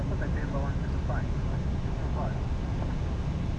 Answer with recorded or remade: recorded